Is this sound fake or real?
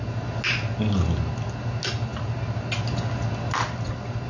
real